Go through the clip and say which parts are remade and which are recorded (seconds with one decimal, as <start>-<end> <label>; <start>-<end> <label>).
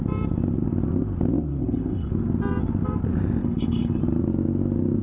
0.0-1.5 recorded; 1.5-2.1 remade; 2.1-3.4 recorded; 3.4-4.0 remade; 4.0-5.0 recorded